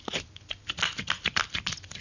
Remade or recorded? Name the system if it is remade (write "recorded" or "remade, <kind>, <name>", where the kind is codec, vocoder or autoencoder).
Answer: recorded